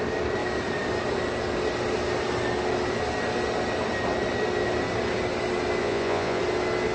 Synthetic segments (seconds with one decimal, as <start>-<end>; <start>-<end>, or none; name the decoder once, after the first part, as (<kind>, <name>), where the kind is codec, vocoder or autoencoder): 5.8-6.4 (vocoder, Vocos)